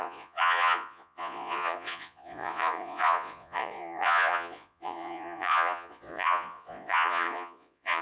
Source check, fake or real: fake